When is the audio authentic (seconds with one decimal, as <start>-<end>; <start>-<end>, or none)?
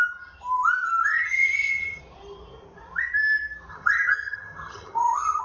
0.0-1.0; 2.0-3.7